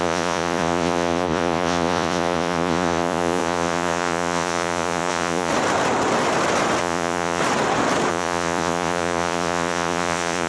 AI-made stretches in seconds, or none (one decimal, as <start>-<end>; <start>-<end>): 0.0-5.5; 6.8-7.4; 8.1-10.5